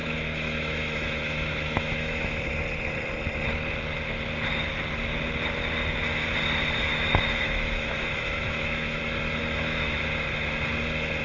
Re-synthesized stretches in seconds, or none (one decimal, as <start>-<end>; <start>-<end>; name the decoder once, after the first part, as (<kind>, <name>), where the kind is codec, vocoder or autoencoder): 0.0-2.5 (autoencoder, DAC-VAE); 6.9-9.0; 9.4-10.0